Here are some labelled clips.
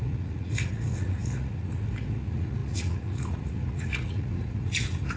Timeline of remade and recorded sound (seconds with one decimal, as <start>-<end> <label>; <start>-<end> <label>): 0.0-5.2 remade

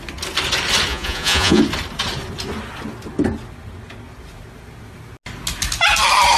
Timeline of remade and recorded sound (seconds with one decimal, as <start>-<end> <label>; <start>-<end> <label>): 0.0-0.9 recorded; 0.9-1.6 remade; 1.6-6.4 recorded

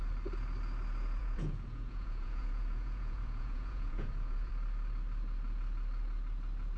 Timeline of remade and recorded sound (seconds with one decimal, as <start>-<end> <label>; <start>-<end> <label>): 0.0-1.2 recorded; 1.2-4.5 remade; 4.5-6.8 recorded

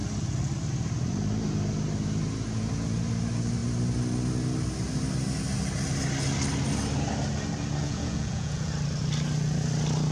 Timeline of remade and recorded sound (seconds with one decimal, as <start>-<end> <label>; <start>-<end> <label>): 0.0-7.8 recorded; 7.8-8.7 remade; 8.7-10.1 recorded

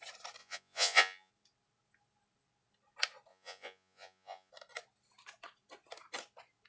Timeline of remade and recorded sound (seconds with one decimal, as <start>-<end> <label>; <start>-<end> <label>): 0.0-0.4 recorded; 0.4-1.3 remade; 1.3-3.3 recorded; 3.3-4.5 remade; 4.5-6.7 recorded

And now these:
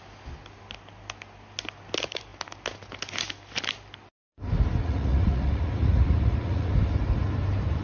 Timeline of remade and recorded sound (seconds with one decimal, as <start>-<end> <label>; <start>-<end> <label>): 0.0-4.8 recorded; 4.8-6.7 remade; 6.7-7.8 recorded